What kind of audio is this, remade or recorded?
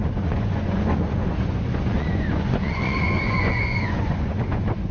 remade